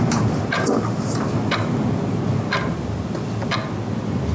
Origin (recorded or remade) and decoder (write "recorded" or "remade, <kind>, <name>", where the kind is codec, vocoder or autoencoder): recorded